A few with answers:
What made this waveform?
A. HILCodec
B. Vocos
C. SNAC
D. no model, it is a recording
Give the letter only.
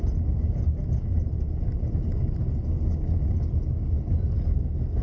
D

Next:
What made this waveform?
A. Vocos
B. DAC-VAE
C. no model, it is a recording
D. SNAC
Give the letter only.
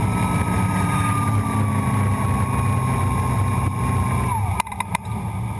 C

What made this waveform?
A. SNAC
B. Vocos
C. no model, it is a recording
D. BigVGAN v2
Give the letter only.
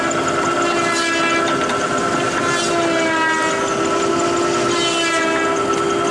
C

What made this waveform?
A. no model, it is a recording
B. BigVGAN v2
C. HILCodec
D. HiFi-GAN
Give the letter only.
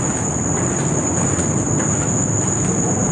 A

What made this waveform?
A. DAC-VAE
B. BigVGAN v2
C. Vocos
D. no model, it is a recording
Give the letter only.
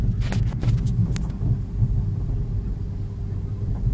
D